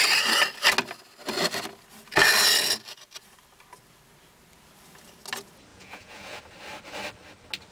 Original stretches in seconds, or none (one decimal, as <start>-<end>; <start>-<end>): 0.0-5.7; 6.4-7.7